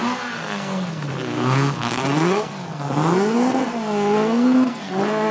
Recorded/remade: remade